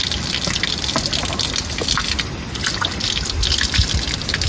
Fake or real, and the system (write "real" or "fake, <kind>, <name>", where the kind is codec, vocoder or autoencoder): real